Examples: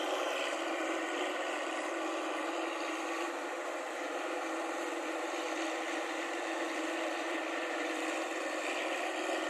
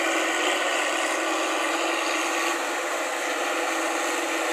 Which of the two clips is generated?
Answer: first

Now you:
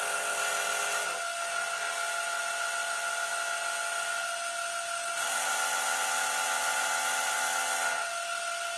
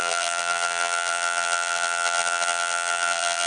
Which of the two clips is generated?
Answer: second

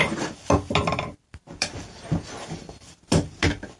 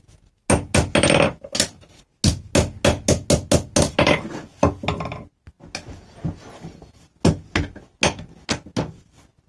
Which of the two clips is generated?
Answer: first